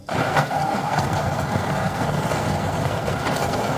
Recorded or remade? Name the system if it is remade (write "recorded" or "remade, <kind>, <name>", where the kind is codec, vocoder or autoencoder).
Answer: remade, codec, SNAC